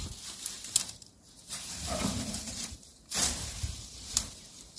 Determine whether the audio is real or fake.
fake